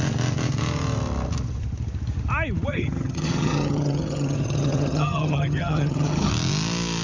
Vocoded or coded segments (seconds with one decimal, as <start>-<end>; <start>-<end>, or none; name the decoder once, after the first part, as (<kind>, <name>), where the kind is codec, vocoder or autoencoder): 2.7-6.3 (vocoder, HiFi-GAN)